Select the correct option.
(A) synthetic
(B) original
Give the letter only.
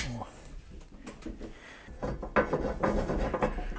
B